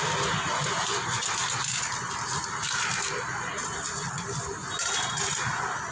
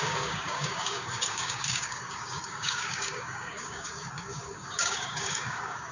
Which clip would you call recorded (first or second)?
first